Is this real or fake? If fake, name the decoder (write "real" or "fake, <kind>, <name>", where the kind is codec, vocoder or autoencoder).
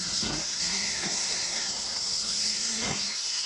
fake, codec, SNAC